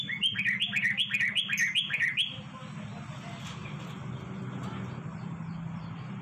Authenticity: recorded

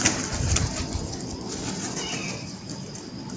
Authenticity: recorded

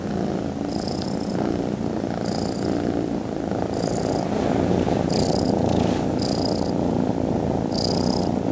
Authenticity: recorded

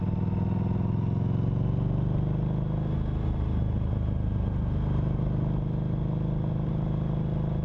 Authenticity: recorded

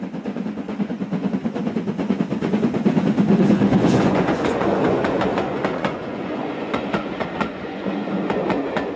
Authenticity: remade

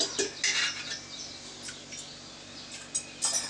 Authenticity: recorded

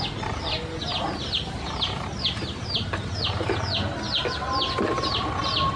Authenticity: recorded